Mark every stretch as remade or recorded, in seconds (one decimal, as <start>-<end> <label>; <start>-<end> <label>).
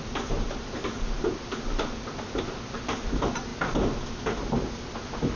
0.0-5.4 recorded